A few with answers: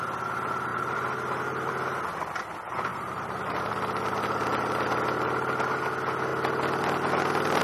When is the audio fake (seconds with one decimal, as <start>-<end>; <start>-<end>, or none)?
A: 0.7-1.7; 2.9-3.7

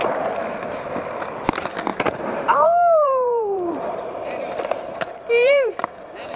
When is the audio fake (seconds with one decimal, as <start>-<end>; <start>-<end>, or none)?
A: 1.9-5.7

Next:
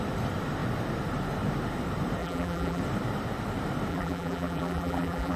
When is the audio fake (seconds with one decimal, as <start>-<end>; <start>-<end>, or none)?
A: 2.2-2.8; 3.9-5.4

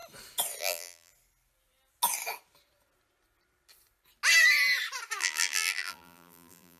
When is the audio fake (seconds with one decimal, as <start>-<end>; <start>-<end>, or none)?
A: 0.6-1.1; 5.2-6.8

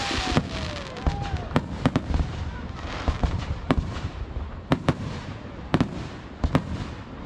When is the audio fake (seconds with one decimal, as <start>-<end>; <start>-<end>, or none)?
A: 2.5-6.0